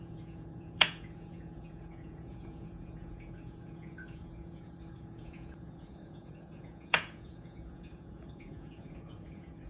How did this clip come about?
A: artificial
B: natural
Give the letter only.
A